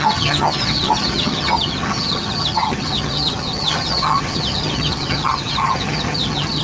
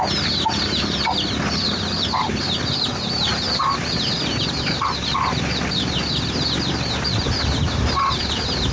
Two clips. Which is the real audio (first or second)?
second